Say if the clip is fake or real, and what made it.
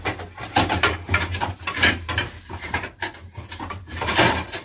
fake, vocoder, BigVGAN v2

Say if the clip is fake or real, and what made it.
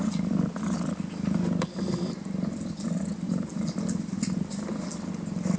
fake, vocoder, BigVGAN v2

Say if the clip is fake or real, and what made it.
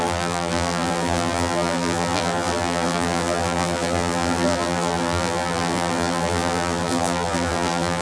fake, vocoder, BigVGAN v2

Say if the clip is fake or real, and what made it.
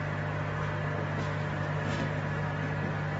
real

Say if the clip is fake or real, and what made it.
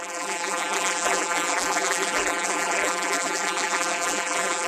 fake, vocoder, BigVGAN v2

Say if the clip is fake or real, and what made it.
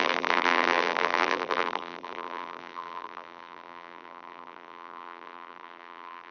fake, vocoder, BigVGAN v2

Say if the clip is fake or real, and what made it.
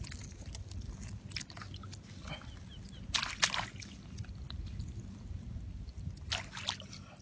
real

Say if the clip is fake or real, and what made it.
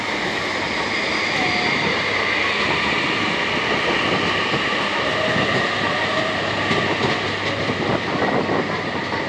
real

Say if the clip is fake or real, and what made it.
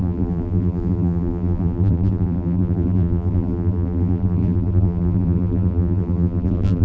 fake, vocoder, BigVGAN v2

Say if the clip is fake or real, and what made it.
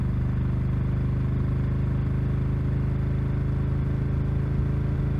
real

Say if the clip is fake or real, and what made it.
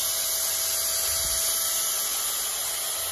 real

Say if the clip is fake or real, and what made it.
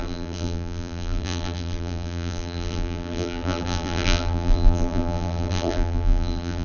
fake, vocoder, BigVGAN v2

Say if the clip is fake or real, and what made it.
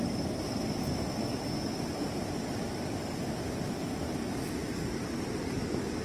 real